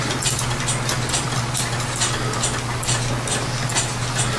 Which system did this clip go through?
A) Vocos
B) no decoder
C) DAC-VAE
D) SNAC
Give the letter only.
B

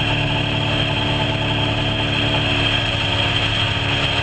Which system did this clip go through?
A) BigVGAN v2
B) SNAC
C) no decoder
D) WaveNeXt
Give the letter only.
C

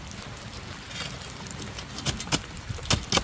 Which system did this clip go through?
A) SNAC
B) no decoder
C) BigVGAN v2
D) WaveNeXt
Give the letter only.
B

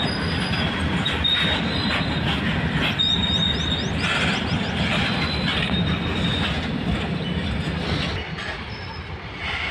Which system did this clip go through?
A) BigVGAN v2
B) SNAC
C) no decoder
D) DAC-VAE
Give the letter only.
C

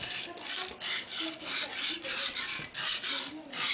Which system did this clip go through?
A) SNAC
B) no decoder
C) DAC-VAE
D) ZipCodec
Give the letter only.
B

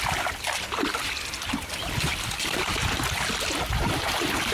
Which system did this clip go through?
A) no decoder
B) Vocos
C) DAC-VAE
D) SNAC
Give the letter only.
A